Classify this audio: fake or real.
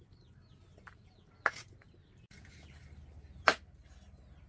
real